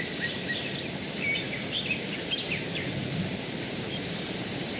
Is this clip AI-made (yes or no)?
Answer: yes